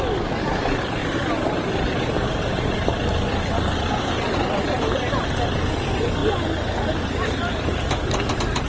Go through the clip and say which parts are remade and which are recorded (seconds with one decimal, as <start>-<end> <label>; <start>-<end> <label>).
0.0-8.7 remade